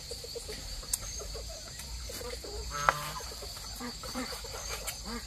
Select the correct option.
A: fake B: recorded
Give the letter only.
A